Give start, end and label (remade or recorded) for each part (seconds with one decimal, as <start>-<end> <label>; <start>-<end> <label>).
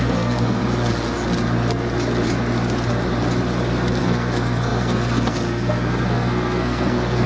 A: 0.0-0.6 remade; 0.6-4.0 recorded; 4.0-7.3 remade